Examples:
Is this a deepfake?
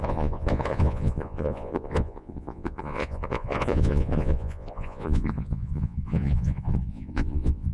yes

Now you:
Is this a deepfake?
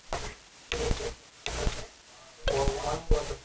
no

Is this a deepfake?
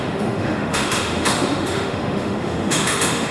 yes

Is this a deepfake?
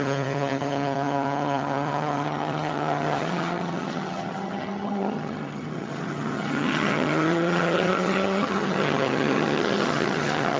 yes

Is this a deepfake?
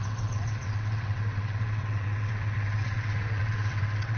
yes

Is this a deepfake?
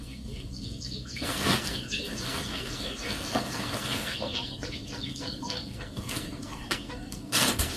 yes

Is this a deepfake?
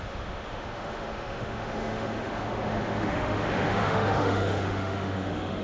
yes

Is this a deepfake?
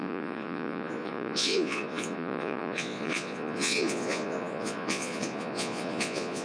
yes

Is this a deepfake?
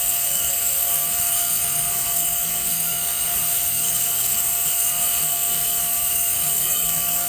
yes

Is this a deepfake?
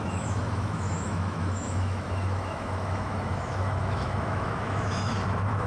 yes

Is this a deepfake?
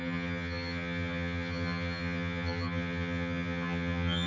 yes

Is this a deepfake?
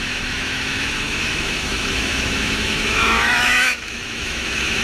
yes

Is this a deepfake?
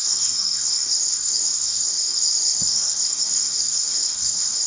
yes